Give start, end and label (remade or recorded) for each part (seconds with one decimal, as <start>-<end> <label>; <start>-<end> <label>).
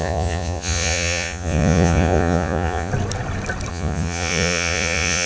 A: 0.0-2.9 remade; 2.9-3.7 recorded; 3.7-5.3 remade